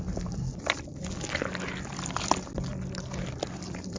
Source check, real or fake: real